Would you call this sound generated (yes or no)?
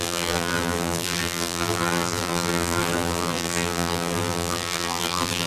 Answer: yes